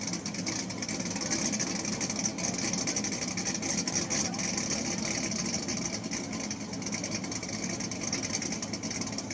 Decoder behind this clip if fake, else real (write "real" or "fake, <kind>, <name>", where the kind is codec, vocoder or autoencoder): real